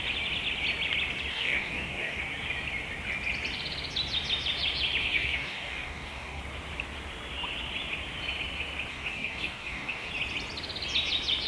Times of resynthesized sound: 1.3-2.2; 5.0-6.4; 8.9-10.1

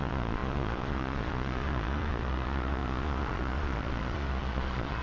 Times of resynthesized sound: 0.0-5.0

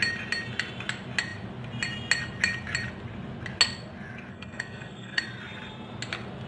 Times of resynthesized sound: 4.3-5.2

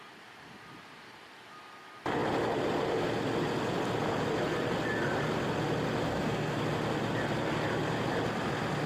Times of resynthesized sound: 6.0-6.6

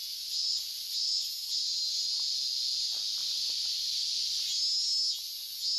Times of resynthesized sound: 0.0-1.3